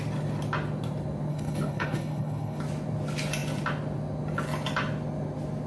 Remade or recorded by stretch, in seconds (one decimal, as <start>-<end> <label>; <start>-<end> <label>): 0.0-1.3 recorded; 1.3-2.6 remade; 2.6-5.7 recorded